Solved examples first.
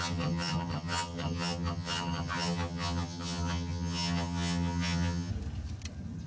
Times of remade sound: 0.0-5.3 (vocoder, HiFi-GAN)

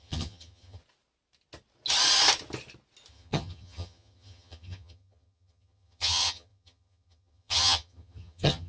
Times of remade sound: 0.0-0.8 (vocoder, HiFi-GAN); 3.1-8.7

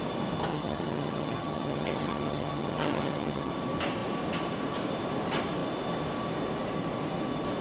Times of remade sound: 0.5-3.5 (vocoder, HiFi-GAN)

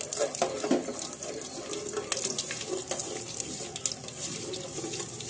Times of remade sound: none

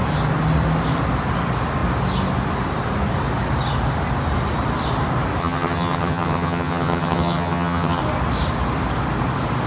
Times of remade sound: 5.4-8.0 (vocoder, HiFi-GAN)

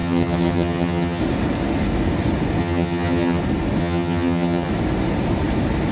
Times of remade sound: 0.0-1.2 (vocoder, HiFi-GAN); 2.6-3.4; 3.8-4.7